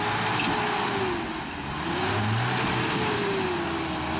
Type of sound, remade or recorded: recorded